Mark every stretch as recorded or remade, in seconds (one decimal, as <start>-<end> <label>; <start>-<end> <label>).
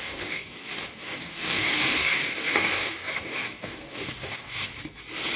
0.0-4.7 remade; 4.7-5.4 recorded